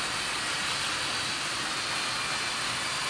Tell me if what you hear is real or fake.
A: real